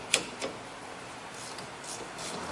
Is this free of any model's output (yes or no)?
no